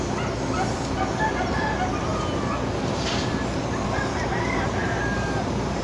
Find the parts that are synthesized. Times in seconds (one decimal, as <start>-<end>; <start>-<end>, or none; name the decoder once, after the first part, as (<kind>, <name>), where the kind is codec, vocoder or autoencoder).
none